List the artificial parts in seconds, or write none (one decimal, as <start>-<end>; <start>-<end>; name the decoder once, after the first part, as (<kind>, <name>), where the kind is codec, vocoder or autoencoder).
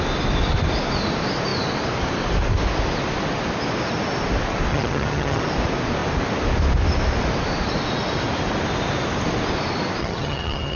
4.7-5.4 (vocoder, HiFi-GAN); 10.0-10.8